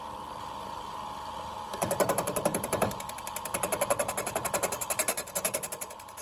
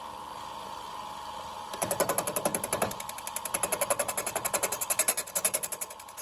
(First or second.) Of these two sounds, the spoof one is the first